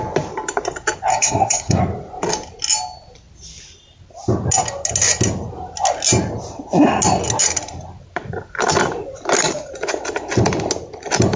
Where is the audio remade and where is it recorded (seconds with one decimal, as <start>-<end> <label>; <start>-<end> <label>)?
0.0-1.1 recorded; 1.1-1.8 remade; 1.8-11.4 recorded